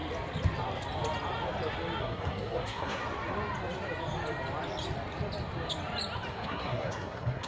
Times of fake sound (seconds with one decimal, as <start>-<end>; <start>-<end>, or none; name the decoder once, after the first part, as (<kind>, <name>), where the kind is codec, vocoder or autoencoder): 2.0-3.0 (codec, SNAC); 6.3-7.5

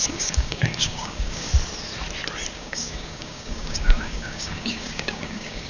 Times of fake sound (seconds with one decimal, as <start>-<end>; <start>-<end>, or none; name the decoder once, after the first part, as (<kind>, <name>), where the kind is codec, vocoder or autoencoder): 0.0-1.5 (codec, DAC); 2.5-5.7

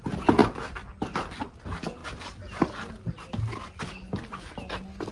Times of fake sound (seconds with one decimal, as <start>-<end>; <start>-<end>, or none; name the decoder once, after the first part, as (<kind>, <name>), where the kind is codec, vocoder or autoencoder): none

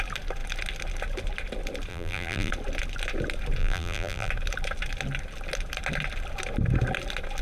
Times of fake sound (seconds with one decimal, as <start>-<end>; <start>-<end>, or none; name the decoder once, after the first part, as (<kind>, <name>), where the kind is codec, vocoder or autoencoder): 1.9-2.5 (vocoder, BigVGAN v2); 3.6-4.3

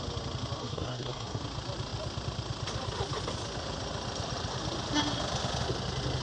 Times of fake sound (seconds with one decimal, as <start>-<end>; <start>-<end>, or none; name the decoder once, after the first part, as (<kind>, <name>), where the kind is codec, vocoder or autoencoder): 0.6-1.4 (codec, SNAC)

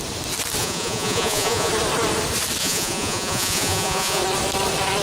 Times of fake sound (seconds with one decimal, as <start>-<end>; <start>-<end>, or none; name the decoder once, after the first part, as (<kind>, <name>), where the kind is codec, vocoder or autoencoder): 0.6-1.7 (vocoder, Vocos); 2.6-4.2

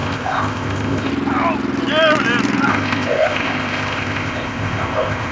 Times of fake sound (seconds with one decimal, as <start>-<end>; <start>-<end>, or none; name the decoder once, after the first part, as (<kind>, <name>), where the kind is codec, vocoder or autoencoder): 0.0-1.1 (codec, ZipCodec); 2.7-5.3